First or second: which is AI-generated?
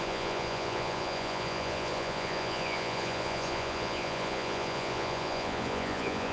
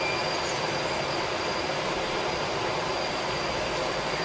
first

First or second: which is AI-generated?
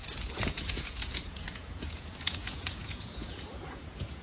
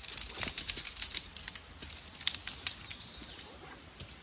first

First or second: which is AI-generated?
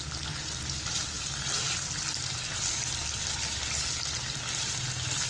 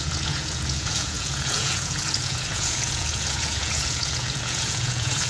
second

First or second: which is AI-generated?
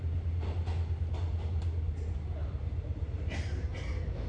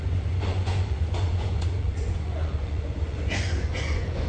second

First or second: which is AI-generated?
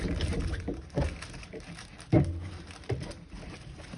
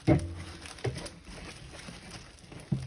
first